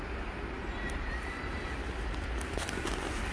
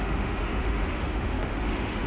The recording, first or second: first